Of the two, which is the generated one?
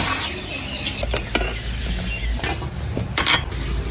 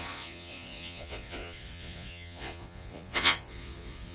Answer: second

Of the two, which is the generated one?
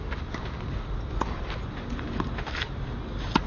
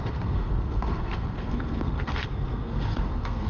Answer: second